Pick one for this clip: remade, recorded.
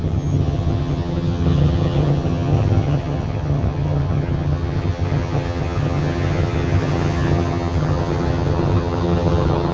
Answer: remade